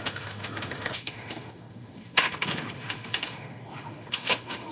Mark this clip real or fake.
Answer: fake